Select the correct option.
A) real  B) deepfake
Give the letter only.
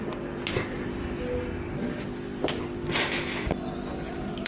A